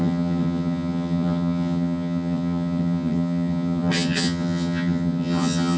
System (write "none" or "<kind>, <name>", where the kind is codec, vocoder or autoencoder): vocoder, HiFi-GAN